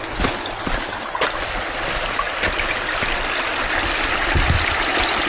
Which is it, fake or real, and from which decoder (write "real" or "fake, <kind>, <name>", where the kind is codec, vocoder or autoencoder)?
real